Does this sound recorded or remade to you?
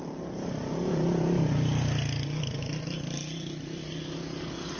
recorded